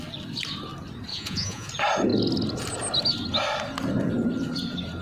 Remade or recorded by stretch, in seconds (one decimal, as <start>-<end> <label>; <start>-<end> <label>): 0.0-1.1 recorded; 1.1-1.7 remade; 1.7-5.0 recorded